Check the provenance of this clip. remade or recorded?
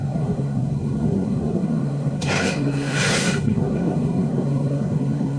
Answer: remade